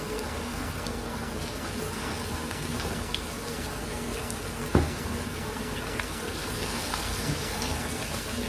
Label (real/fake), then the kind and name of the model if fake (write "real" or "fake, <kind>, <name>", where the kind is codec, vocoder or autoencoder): fake, codec, SNAC